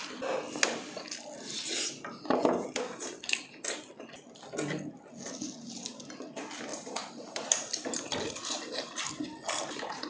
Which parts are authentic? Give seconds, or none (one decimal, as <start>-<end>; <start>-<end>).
0.0-6.7; 9.0-10.1